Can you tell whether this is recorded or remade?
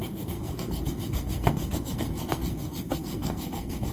remade